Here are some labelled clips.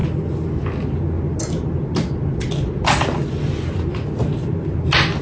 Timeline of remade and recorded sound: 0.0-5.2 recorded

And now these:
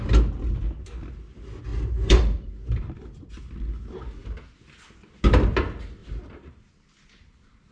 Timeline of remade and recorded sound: 0.0-1.7 recorded; 1.7-3.3 remade; 3.3-6.0 recorded; 6.0-6.7 remade; 6.7-7.7 recorded

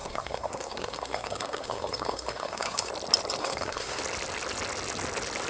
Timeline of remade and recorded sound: 0.0-2.9 remade; 2.9-3.4 recorded; 3.4-4.0 remade; 4.0-5.5 recorded

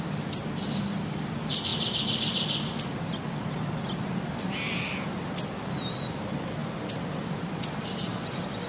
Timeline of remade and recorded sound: 0.0-1.7 remade; 1.7-4.4 recorded; 4.4-8.7 remade